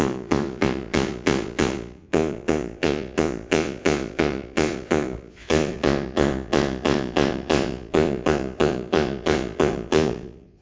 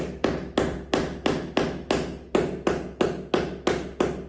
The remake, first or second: first